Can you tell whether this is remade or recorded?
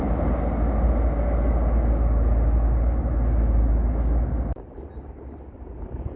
recorded